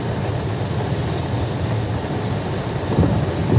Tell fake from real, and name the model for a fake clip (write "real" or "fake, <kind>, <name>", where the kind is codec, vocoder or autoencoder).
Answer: real